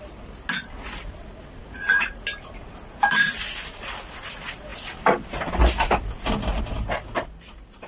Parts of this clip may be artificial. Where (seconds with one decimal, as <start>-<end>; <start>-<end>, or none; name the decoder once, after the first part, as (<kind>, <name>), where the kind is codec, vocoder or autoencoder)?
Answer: none